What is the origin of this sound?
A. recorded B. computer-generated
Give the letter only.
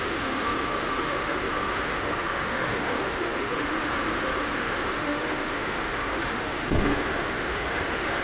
B